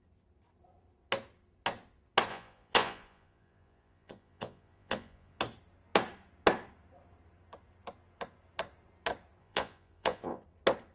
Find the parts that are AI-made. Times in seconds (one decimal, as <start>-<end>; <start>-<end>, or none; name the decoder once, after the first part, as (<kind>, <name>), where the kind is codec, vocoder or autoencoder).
2.3-5.4 (vocoder, Vocos); 9.4-10.4